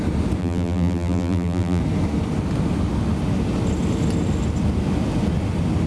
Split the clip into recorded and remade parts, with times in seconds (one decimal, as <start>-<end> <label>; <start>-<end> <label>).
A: 0.0-0.4 recorded; 0.4-1.8 remade; 1.8-5.9 recorded

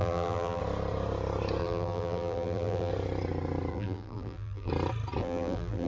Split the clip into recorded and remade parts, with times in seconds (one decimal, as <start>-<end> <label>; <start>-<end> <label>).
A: 0.0-0.6 remade; 0.6-1.6 recorded; 1.6-2.9 remade; 2.9-3.7 recorded; 3.7-4.7 remade; 4.7-5.2 recorded; 5.2-5.9 remade